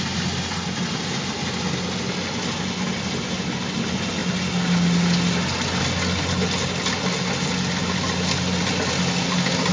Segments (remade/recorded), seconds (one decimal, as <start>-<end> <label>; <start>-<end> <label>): 0.0-9.7 recorded